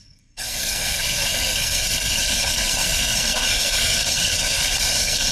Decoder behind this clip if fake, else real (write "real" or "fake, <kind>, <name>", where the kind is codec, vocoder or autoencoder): fake, codec, SNAC